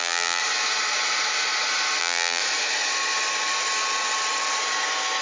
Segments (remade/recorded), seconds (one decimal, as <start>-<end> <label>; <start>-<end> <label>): 0.0-0.4 remade; 0.4-2.0 recorded; 2.0-2.4 remade; 2.4-5.2 recorded